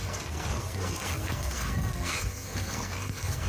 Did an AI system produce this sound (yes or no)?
yes